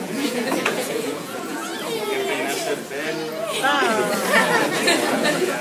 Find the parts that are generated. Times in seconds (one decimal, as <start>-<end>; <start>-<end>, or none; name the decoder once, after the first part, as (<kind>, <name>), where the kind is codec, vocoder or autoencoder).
0.0-1.7 (vocoder, Vocos); 5.1-5.6